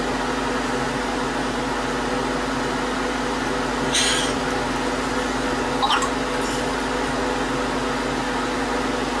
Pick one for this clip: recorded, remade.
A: recorded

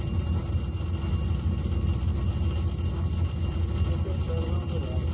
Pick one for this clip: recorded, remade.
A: recorded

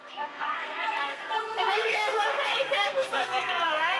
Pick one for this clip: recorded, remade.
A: remade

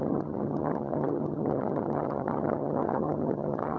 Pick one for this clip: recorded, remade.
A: remade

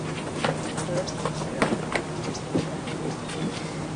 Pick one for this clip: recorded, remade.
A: recorded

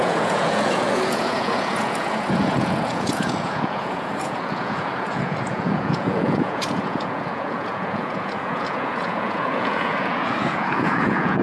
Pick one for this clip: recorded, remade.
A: remade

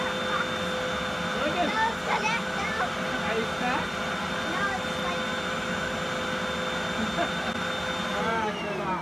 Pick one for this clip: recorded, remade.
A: recorded